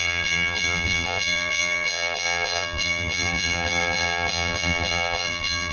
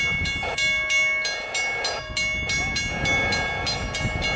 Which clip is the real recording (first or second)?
second